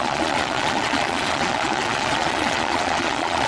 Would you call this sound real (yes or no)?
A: no